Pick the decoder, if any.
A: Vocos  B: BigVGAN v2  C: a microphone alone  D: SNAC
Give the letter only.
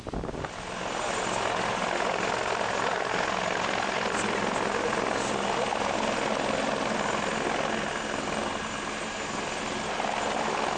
C